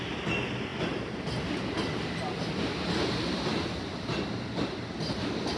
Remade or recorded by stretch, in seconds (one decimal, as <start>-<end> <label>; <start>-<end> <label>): 0.0-5.6 recorded